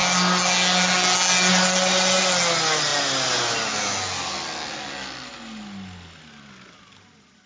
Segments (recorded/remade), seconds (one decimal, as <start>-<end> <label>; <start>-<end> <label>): 0.0-7.5 recorded